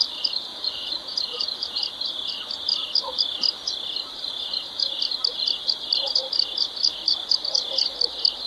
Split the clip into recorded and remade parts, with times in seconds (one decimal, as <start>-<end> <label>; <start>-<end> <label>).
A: 0.0-0.5 recorded; 0.5-1.8 remade; 1.8-8.5 recorded